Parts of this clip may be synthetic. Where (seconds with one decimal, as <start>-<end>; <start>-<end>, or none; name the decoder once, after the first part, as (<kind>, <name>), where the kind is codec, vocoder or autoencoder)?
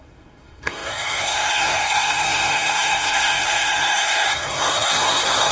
0.0-5.5 (codec, SNAC)